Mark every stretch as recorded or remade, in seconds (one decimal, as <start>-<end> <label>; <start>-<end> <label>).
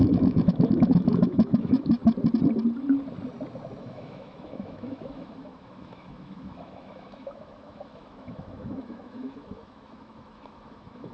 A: 0.0-2.0 remade; 2.0-3.8 recorded; 3.8-11.1 remade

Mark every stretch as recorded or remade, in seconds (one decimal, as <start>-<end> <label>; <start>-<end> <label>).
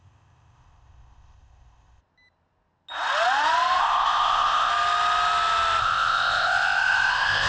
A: 0.0-2.0 remade; 2.0-3.8 recorded; 3.8-4.7 remade; 4.7-5.8 recorded; 5.8-7.5 remade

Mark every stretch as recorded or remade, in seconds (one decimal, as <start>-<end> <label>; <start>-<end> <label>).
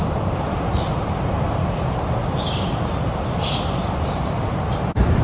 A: 0.0-1.6 remade; 1.6-2.3 recorded; 2.3-5.2 remade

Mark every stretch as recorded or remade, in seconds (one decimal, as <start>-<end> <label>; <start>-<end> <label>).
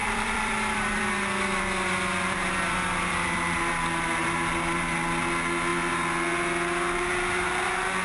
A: 0.0-1.1 remade; 1.1-8.0 recorded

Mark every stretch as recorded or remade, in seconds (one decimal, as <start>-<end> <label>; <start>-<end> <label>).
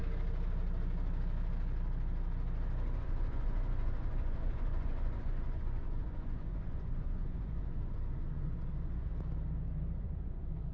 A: 0.0-3.0 recorded; 3.0-9.1 remade; 9.1-10.0 recorded; 10.0-10.7 remade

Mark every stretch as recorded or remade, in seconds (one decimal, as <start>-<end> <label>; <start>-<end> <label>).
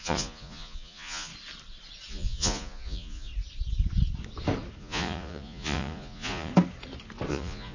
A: 0.0-1.3 remade; 1.3-2.1 recorded; 2.1-3.3 remade; 3.3-4.8 recorded; 4.8-6.5 remade; 6.5-7.3 recorded; 7.3-7.7 remade